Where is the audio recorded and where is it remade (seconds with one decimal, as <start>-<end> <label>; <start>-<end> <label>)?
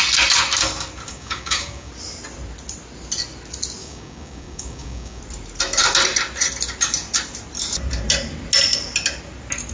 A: 0.0-1.1 recorded; 1.1-1.9 remade; 1.9-3.8 recorded; 3.8-5.2 remade; 5.2-9.7 recorded